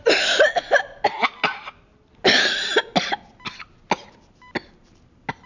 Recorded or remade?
recorded